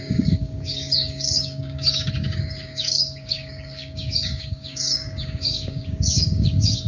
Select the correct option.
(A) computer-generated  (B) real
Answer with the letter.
A